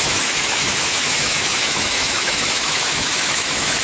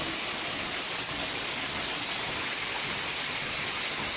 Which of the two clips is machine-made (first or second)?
first